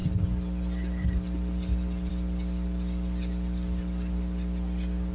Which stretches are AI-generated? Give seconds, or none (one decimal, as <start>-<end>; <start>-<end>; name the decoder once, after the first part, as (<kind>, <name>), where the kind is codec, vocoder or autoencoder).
none